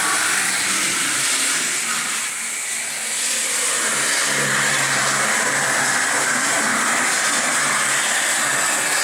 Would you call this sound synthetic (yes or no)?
no